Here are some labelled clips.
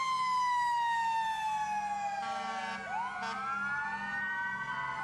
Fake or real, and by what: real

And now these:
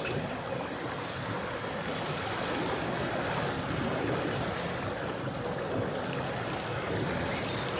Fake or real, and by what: real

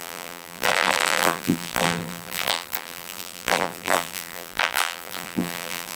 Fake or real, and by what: fake, vocoder, BigVGAN v2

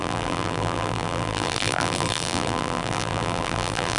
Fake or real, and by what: fake, vocoder, BigVGAN v2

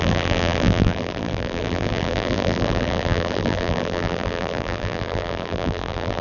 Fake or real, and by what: fake, vocoder, BigVGAN v2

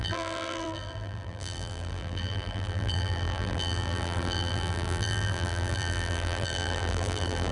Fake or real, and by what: fake, vocoder, BigVGAN v2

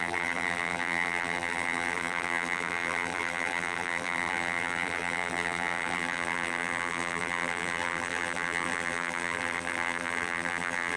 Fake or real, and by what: fake, vocoder, BigVGAN v2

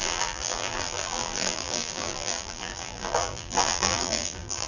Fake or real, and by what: fake, vocoder, BigVGAN v2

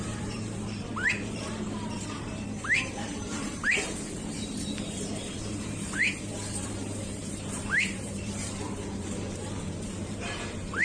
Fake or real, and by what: fake, vocoder, BigVGAN v2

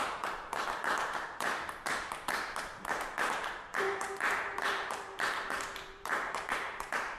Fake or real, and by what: fake, vocoder, BigVGAN v2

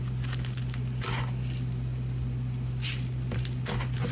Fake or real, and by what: real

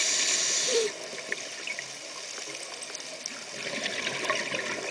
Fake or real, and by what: real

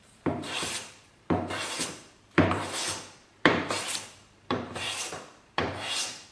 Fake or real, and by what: fake, vocoder, BigVGAN v2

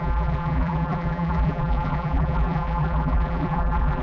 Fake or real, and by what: fake, vocoder, BigVGAN v2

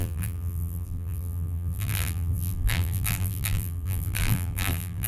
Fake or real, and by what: fake, vocoder, BigVGAN v2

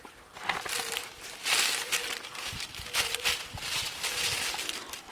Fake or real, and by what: real